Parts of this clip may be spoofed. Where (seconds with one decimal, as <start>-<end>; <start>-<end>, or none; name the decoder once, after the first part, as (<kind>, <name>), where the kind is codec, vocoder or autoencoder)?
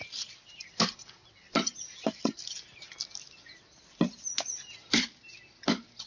none